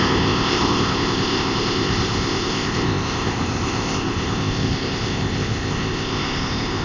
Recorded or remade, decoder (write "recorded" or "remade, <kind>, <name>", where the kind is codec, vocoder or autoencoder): remade, codec, ZipCodec